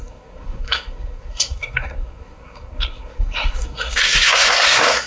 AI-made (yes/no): yes